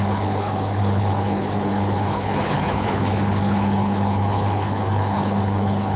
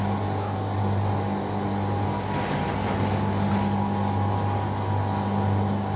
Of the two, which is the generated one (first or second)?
first